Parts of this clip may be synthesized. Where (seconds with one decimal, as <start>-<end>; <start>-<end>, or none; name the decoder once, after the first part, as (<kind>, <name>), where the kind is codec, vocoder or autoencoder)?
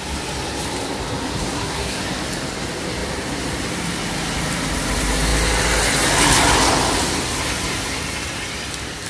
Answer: 1.4-2.0 (codec, SNAC)